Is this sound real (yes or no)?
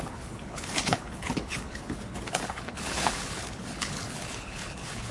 no